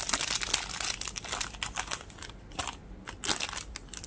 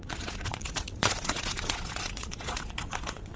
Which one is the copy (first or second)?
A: second